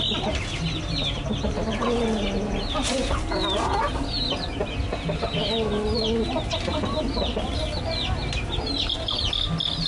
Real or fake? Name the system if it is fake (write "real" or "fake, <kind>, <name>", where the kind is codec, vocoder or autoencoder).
real